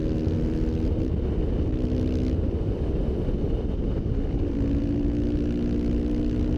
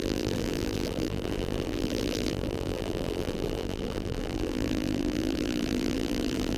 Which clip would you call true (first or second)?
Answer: first